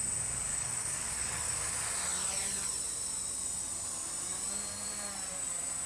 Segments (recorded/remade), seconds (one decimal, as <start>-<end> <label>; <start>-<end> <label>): 0.0-0.5 recorded; 0.5-1.5 remade; 1.5-5.9 recorded